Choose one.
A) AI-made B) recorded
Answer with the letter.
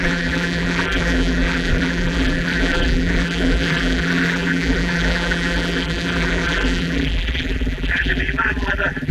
A